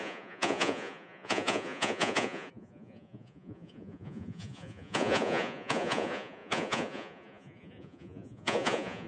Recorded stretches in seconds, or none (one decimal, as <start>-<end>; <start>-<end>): none